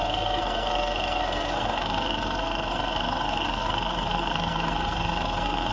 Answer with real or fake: fake